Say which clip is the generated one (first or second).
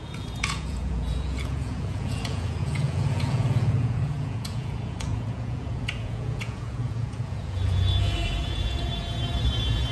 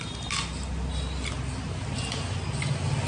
first